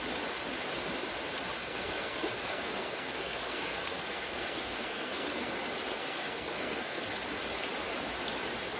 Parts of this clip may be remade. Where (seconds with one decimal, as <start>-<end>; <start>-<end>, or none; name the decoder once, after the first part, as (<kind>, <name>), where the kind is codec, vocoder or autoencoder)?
1.6-5.5 (codec, SNAC); 5.9-7.0